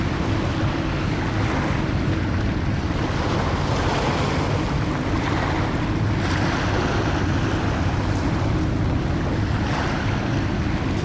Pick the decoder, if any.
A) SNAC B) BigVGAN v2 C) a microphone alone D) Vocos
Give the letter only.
C